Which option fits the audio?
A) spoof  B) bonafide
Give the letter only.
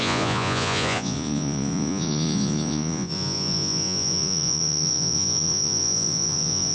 A